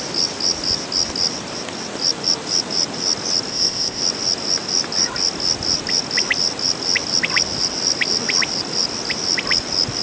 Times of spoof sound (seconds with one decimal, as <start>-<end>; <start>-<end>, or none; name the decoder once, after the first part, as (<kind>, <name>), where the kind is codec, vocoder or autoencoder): 3.5-4.0 (codec, ZipCodec)